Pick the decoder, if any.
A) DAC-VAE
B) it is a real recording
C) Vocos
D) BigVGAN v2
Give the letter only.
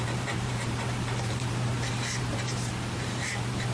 D